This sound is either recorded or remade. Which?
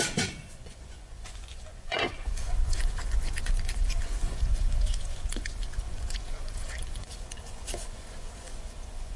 remade